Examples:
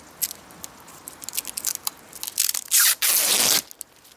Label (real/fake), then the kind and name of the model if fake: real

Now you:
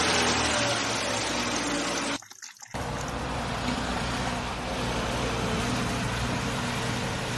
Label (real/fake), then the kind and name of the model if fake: real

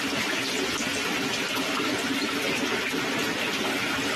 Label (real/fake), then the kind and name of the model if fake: real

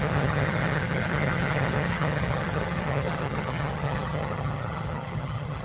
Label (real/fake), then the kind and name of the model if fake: fake, vocoder, HiFi-GAN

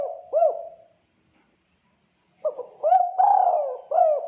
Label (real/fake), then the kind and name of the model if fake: real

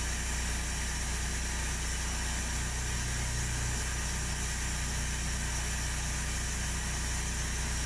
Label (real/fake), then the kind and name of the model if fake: real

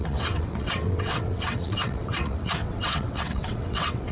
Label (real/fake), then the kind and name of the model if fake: fake, vocoder, WaveNeXt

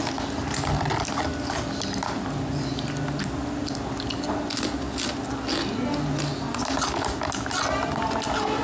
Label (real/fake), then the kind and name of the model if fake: real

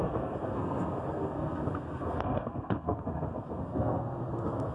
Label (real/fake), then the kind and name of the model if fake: fake, codec, SNAC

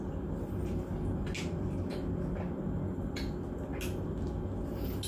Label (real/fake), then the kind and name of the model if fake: real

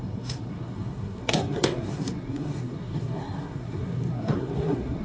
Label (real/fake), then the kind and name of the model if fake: fake, codec, SNAC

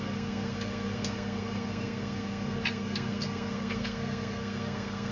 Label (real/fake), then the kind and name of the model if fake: fake, codec, SNAC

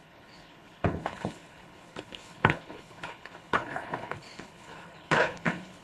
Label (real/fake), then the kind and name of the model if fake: fake, codec, HILCodec